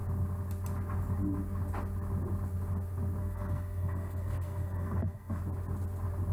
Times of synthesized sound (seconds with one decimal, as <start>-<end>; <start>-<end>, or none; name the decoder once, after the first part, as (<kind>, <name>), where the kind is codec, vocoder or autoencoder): 3.2-5.4 (codec, SNAC)